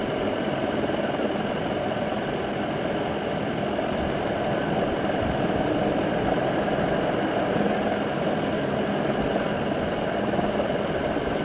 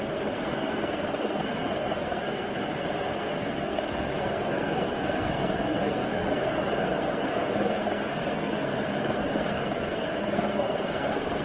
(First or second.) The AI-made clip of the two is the second